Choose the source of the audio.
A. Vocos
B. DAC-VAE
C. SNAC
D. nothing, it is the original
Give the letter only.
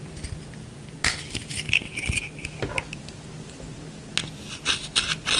D